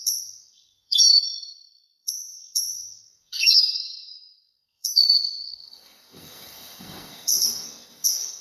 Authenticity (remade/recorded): remade